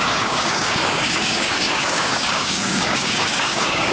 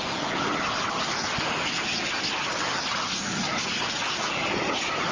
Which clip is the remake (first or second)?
first